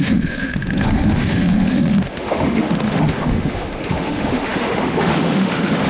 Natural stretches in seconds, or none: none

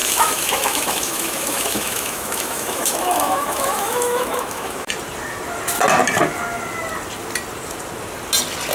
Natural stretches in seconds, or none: 4.9-8.7

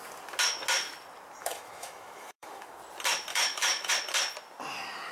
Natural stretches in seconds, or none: 0.0-1.4; 2.8-3.3; 3.9-5.1

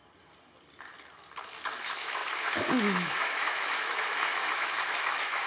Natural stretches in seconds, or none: 0.0-1.8

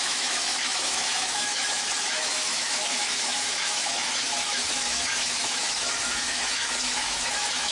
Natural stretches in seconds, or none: none

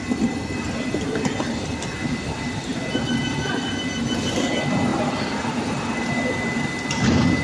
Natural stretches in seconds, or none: 0.0-7.4

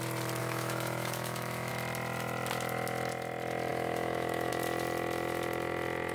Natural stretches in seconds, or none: 0.0-0.4; 1.7-3.7; 4.5-6.1